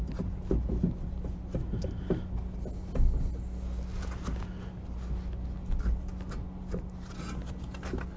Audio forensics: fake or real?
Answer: real